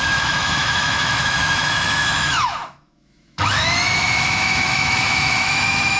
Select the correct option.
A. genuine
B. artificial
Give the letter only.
B